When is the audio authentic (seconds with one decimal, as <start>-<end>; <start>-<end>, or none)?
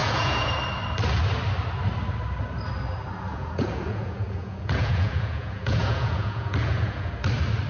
0.5-3.3; 7.1-7.7